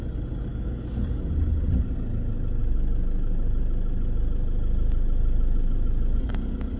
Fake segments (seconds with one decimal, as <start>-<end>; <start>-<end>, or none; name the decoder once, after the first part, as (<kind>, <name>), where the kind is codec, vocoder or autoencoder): 0.5-1.2 (codec, DAC)